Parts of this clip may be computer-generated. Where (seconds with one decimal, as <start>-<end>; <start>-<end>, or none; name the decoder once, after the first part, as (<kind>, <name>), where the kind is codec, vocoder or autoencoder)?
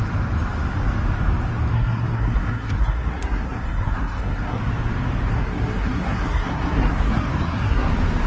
1.7-4.6 (codec, SNAC); 5.3-7.9